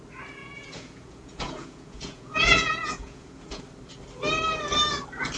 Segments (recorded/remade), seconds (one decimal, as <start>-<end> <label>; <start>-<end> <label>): 0.0-0.4 recorded; 0.4-3.6 remade; 3.6-5.4 recorded